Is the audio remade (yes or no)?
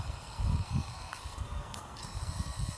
yes